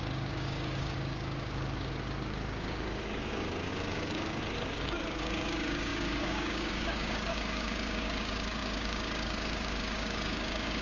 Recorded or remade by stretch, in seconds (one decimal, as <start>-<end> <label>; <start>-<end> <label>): 0.0-10.8 remade